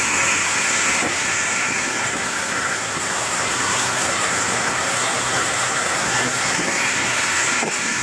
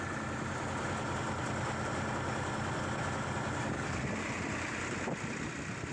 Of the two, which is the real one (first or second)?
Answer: second